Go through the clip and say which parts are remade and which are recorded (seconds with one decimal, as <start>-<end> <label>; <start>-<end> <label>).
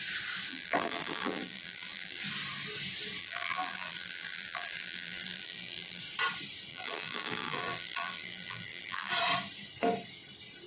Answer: 0.0-0.5 recorded; 0.5-2.2 remade; 2.2-3.2 recorded; 3.2-6.0 remade; 6.0-6.7 recorded; 6.7-9.1 remade; 9.1-10.7 recorded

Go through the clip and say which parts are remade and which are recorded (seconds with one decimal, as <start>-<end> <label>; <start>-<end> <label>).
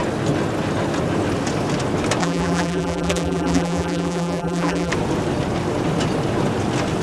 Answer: 0.0-2.2 recorded; 2.2-4.9 remade; 4.9-7.0 recorded